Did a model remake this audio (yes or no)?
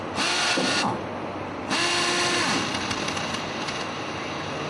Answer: no